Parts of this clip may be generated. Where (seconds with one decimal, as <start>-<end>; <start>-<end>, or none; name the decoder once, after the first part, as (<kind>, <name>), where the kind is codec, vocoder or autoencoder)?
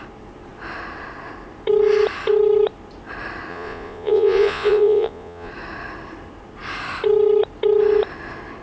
3.5-5.5 (vocoder, Vocos)